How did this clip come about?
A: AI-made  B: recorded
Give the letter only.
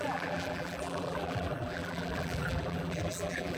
A